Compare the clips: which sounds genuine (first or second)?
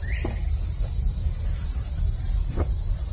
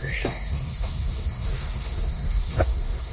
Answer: first